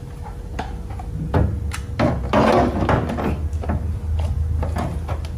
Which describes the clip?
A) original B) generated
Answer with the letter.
A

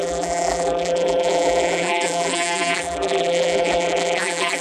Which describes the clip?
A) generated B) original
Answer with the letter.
A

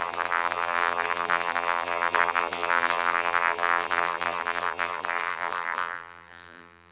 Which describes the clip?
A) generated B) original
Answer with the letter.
A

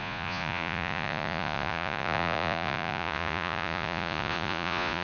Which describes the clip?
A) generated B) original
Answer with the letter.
A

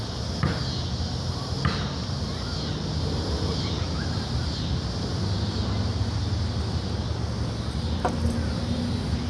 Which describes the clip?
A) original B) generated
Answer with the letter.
A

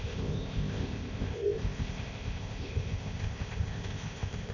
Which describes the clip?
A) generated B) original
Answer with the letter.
A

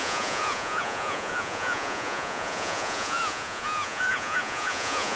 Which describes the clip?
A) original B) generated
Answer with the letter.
B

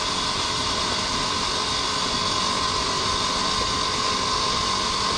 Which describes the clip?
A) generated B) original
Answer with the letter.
B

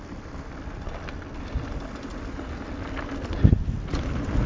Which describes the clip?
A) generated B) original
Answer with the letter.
B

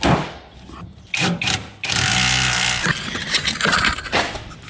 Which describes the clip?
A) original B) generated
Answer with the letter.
A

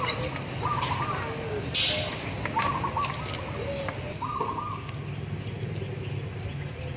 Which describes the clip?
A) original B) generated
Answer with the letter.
A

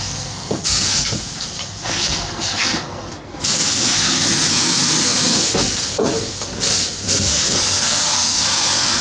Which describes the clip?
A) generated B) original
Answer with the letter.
A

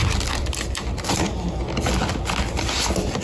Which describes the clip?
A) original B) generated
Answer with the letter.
A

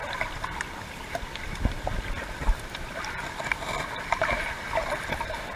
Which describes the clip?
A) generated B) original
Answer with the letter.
B